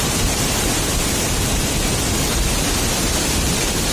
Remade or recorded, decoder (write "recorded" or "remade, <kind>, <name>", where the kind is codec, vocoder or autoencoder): recorded